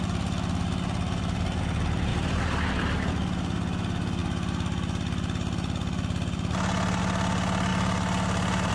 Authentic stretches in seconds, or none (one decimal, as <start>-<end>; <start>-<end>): 0.0-2.1; 3.1-7.7